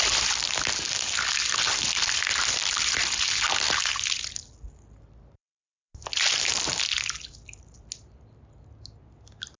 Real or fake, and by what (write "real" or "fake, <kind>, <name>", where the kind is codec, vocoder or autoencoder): real